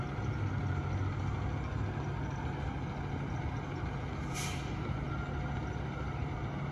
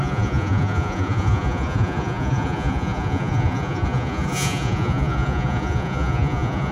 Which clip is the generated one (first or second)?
second